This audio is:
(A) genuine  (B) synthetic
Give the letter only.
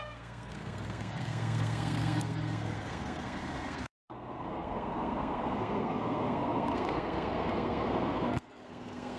B